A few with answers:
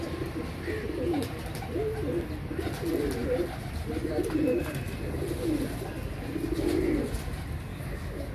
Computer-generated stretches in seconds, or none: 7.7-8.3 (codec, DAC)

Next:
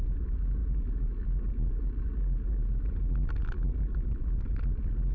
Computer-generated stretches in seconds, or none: none

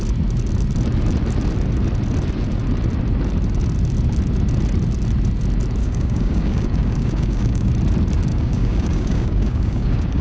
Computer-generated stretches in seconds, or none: 5.8-7.7 (codec, DAC); 8.3-10.2

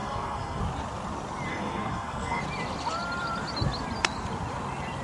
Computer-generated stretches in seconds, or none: 0.0-0.6 (codec, SNAC); 1.5-2.4

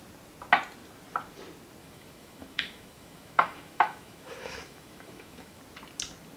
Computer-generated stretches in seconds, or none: 1.8-5.6 (autoencoder, DAC-VAE)